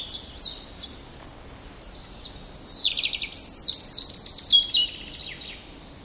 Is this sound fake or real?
real